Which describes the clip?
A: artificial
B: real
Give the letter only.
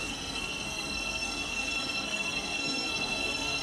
A